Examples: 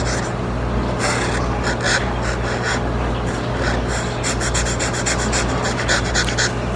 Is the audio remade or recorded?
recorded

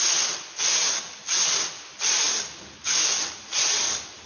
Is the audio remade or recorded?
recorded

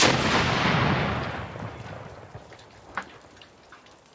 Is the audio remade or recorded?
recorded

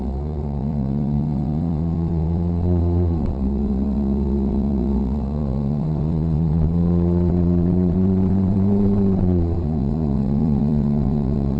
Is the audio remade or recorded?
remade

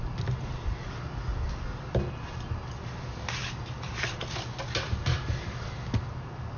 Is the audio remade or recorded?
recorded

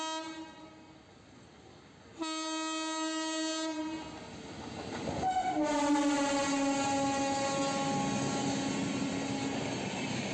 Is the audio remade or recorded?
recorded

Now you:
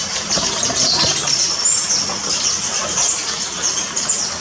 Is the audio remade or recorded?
recorded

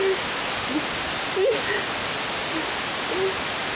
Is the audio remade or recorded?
recorded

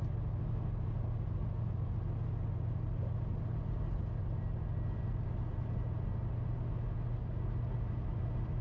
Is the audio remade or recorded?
recorded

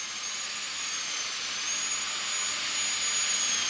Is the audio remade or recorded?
recorded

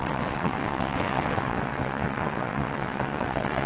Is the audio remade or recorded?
remade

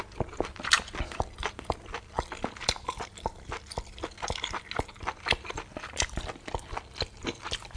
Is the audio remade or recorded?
recorded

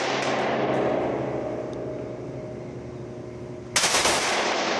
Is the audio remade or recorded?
recorded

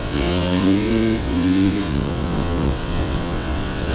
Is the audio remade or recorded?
remade